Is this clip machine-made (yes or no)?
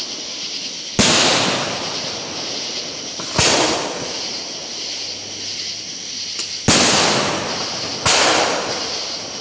no